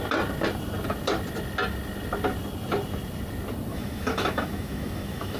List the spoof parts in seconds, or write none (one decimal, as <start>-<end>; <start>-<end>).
3.7-5.4